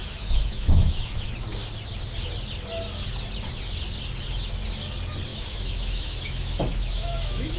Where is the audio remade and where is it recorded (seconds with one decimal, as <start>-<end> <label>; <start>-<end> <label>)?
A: 0.0-1.3 remade; 1.3-5.3 recorded; 5.3-7.6 remade